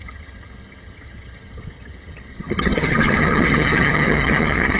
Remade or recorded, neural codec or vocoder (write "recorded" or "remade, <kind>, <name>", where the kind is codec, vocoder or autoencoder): remade, vocoder, HiFi-GAN